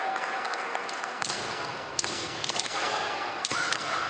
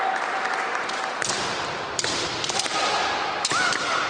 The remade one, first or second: first